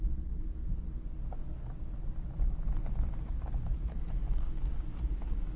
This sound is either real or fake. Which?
real